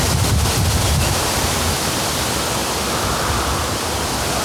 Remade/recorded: recorded